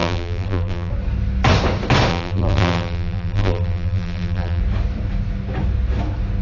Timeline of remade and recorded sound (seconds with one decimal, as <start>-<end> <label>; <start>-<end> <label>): 0.0-0.9 remade; 0.9-2.1 recorded; 2.1-4.6 remade; 4.6-6.4 recorded